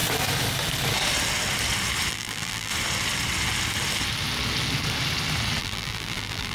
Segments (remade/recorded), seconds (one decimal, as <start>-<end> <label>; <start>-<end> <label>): 0.0-2.1 recorded; 2.1-2.7 remade; 2.7-5.6 recorded; 5.6-6.5 remade

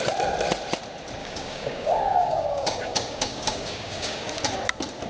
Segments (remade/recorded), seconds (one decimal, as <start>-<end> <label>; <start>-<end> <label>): 0.0-1.2 recorded; 1.2-4.3 remade; 4.3-5.1 recorded

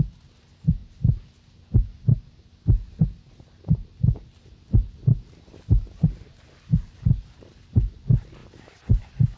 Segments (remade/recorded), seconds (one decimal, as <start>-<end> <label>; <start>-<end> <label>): 0.0-9.4 recorded

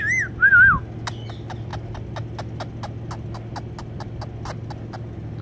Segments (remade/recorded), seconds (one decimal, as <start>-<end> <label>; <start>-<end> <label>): 0.0-5.4 recorded

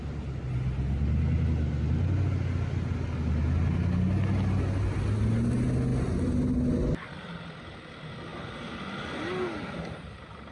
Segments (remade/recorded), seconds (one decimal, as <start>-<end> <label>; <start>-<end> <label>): 0.0-8.3 recorded; 8.3-8.8 remade; 8.8-10.5 recorded

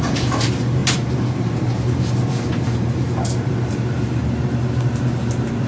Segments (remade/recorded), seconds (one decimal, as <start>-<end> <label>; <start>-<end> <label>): 0.0-4.2 remade; 4.2-5.0 recorded; 5.0-5.7 remade

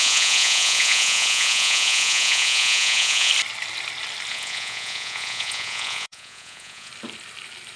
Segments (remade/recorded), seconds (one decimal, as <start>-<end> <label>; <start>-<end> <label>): 0.0-3.3 remade; 3.3-4.3 recorded; 4.3-6.9 remade; 6.9-7.8 recorded

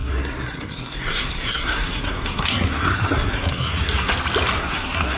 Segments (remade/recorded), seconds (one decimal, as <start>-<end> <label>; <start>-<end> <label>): 0.0-4.1 remade; 4.1-4.6 recorded; 4.6-5.2 remade